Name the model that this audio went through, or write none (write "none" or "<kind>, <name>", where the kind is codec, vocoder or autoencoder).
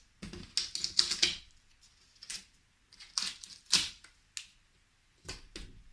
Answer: none